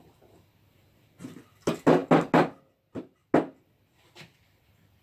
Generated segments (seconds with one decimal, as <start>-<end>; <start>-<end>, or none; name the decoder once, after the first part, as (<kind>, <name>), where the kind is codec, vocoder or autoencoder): none